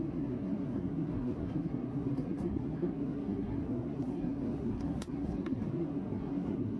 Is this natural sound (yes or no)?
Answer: no